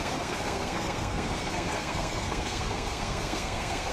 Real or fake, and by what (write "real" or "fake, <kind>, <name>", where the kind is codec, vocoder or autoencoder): fake, codec, SNAC